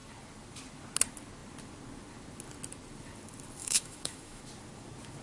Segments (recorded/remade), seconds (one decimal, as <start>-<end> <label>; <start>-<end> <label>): 0.0-3.6 recorded; 3.6-4.4 remade; 4.4-5.2 recorded